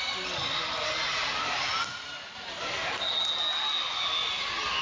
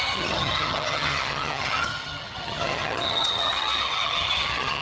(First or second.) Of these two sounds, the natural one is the first